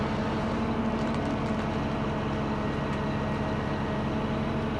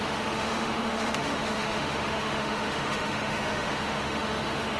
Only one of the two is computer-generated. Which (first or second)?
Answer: second